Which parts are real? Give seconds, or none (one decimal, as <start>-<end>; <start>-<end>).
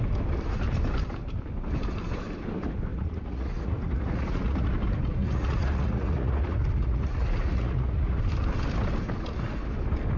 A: 0.0-2.9; 4.7-5.2; 8.2-10.2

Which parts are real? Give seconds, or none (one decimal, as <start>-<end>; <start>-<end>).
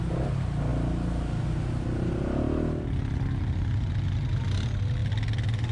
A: 0.0-5.7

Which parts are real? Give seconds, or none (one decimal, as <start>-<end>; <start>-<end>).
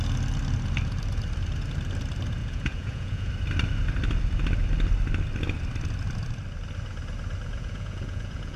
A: 0.0-2.4; 3.3-7.5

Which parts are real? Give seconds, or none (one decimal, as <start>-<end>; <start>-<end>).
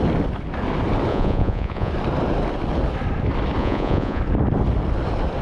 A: 0.0-1.1; 1.9-3.6; 4.2-5.4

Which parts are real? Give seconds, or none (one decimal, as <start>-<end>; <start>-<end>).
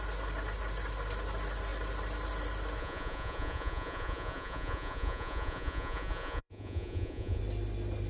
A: 0.0-2.8; 7.4-8.1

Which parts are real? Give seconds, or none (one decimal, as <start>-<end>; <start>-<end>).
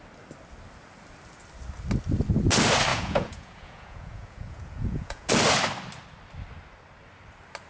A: 0.0-2.9; 5.3-7.7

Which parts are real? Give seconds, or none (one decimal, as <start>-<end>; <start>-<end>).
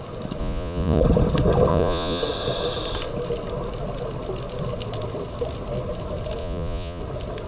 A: 0.0-0.4; 1.0-1.7; 2.2-6.4; 7.0-7.5